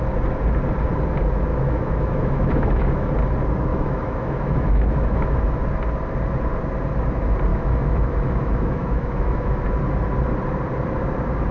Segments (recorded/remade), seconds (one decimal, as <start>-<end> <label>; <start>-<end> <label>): 0.0-1.5 recorded; 1.5-3.1 remade; 3.1-3.7 recorded; 3.7-5.6 remade; 5.6-7.5 recorded; 7.5-9.6 remade; 9.6-11.5 recorded